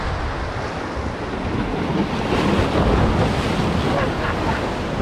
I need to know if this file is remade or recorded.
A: recorded